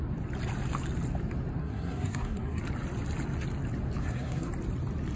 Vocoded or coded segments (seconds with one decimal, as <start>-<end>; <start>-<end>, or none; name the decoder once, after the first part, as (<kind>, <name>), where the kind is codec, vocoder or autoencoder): 1.6-2.6 (codec, SNAC); 4.0-4.5